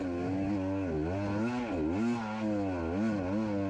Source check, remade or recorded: recorded